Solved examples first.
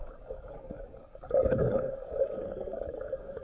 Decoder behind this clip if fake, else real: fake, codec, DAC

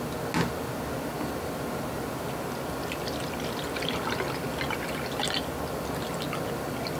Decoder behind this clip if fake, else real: real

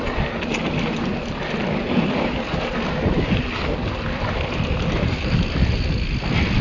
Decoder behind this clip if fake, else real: real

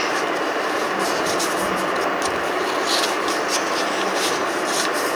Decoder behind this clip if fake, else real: real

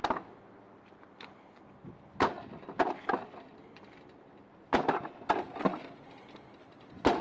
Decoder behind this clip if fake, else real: real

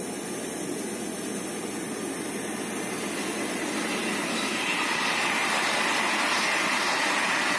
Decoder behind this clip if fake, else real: real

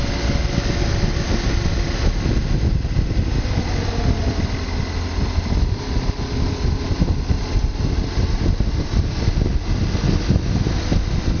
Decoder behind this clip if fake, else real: real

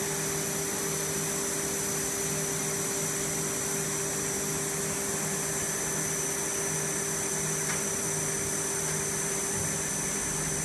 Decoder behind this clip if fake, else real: real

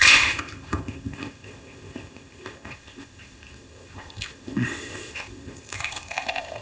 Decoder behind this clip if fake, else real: fake, codec, ZipCodec